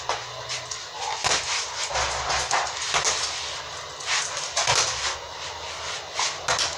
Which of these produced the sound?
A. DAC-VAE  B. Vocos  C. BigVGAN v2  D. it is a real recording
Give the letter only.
D